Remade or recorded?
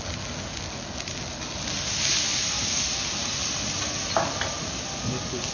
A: recorded